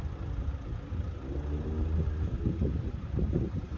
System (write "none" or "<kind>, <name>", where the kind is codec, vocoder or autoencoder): none